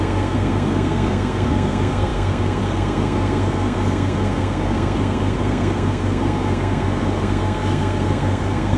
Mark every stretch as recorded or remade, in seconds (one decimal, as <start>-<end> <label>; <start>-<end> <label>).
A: 0.0-8.8 remade